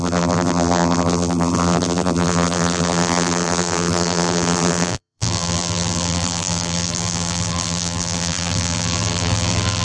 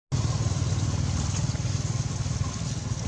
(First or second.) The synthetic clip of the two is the first